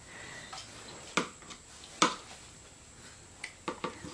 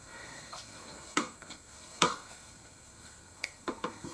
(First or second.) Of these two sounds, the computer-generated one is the second